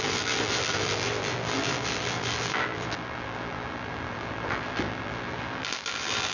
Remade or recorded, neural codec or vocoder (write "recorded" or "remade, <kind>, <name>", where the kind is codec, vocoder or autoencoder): remade, vocoder, BigVGAN v2